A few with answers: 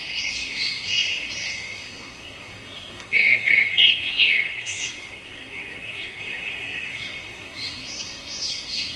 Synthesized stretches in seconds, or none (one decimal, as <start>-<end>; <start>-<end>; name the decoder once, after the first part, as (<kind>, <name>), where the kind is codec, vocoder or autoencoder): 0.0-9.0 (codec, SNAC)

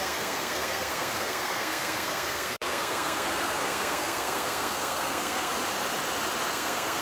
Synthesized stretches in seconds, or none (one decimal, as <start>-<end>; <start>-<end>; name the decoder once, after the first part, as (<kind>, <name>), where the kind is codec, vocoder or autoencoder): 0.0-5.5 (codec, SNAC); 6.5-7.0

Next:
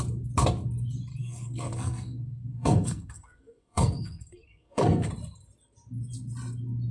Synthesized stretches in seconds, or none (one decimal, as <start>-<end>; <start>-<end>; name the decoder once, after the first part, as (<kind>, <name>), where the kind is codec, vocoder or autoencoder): 1.1-5.1 (codec, SNAC)

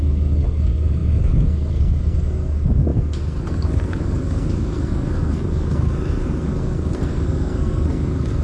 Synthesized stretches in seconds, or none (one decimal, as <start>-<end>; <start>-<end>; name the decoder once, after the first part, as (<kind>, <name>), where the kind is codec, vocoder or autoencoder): 0.0-8.4 (codec, SNAC)